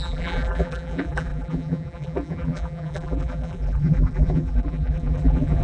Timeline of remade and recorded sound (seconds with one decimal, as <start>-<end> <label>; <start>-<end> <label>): 0.0-5.6 remade